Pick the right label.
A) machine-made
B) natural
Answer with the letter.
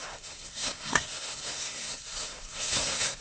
A